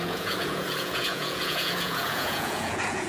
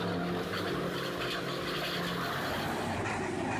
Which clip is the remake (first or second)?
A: first